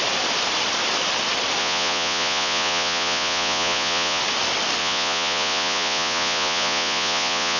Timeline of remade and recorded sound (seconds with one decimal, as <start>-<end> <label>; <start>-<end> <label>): 0.0-1.6 recorded; 1.6-4.2 remade; 4.2-4.8 recorded; 4.8-7.6 remade